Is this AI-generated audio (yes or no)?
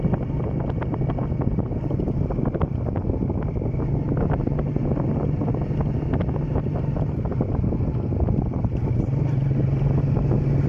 no